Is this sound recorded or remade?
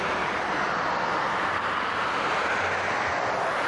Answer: recorded